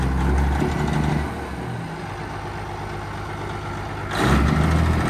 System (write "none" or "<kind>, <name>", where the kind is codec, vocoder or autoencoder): none